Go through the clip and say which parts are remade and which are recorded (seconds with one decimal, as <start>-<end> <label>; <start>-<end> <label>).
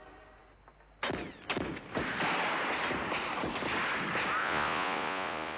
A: 0.0-4.4 recorded; 4.4-5.6 remade